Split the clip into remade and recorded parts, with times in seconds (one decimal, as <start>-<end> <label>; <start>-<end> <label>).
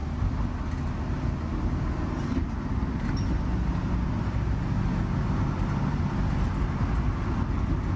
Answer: 0.0-8.0 recorded